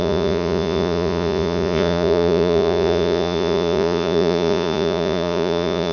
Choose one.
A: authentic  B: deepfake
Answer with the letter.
B